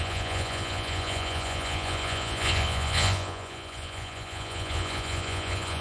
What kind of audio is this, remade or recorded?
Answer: remade